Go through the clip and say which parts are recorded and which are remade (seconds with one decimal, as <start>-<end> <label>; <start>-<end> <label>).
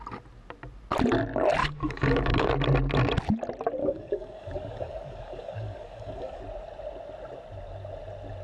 0.0-1.6 recorded; 1.6-2.5 remade; 2.5-3.8 recorded; 3.8-6.4 remade; 6.4-8.4 recorded